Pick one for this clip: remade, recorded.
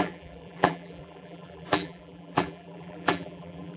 remade